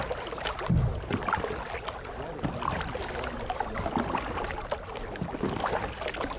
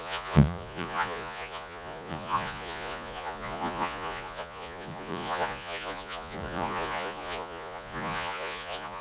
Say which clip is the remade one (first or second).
second